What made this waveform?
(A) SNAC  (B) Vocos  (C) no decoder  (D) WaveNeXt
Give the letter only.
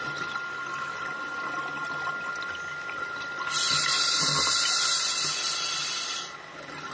C